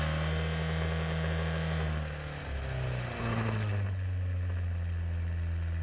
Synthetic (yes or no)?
no